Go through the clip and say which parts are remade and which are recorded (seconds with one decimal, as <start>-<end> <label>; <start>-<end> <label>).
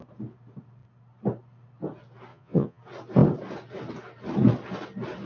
0.0-2.3 recorded; 2.3-2.8 remade; 2.8-5.3 recorded